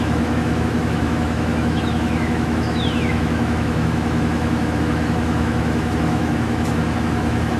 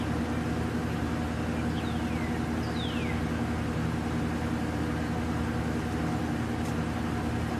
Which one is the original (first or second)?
second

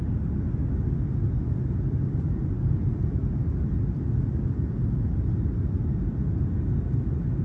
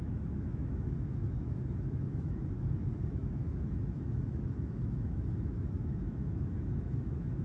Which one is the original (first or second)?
first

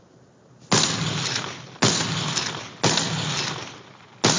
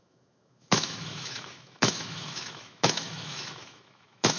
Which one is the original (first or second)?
first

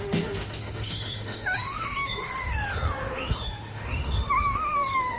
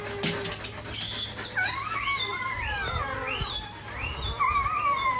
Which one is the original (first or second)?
second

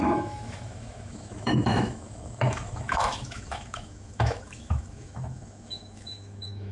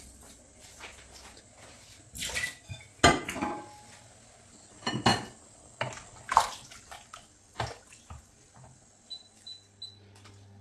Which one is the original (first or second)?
second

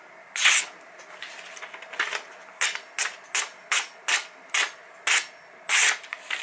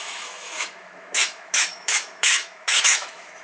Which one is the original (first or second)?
first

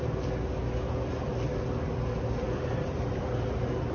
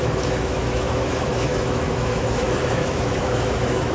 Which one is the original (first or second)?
first